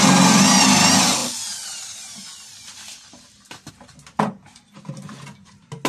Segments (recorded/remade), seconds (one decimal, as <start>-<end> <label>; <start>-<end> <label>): 0.0-5.9 recorded